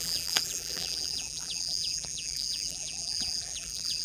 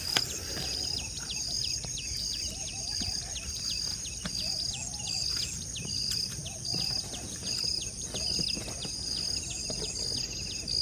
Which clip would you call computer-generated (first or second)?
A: first